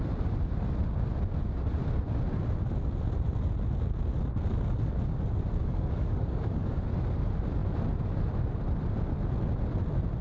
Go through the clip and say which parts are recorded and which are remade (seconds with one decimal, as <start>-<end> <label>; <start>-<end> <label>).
0.0-5.6 recorded; 5.6-6.8 remade; 6.8-10.2 recorded